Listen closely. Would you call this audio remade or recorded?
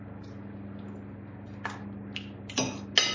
recorded